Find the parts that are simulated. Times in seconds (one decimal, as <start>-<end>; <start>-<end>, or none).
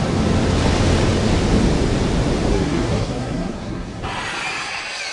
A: 2.5-4.0